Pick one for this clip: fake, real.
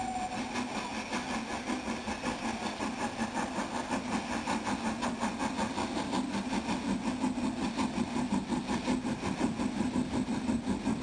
real